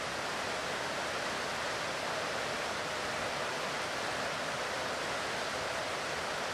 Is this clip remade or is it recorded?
recorded